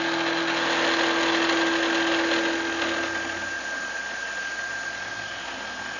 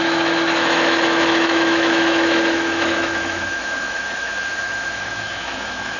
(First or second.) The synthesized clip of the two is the second